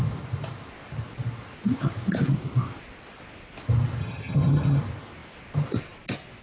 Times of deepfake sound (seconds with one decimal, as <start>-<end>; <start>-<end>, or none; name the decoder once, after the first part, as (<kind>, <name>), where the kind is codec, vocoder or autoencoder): 4.0-4.8 (vocoder, HiFi-GAN)